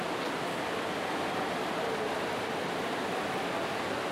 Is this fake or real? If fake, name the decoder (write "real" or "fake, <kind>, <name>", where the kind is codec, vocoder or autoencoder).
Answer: real